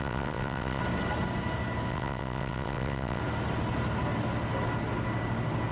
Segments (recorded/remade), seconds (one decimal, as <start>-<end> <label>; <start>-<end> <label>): 0.0-0.8 remade; 0.8-1.9 recorded; 1.9-3.2 remade; 3.2-5.7 recorded